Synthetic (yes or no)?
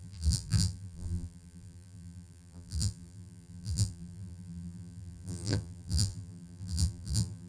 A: yes